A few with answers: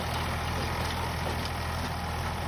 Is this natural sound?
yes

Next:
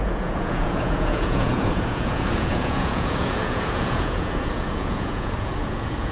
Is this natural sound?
no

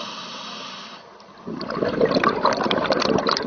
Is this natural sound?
yes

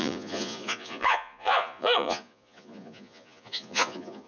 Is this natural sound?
no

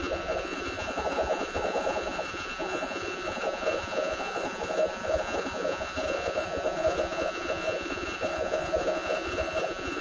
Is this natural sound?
no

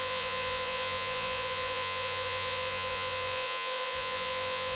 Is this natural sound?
no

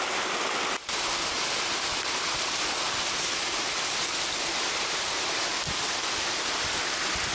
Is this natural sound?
yes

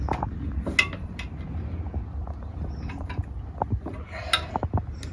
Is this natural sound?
yes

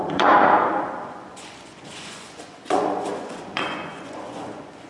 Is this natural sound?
no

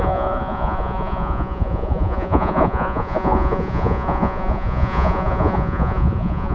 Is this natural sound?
no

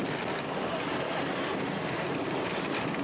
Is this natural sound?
yes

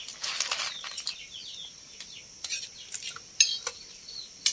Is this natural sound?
yes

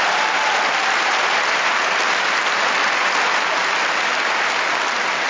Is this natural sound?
yes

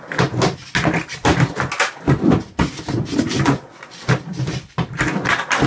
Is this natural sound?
yes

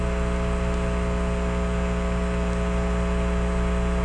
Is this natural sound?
yes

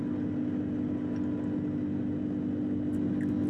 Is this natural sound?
yes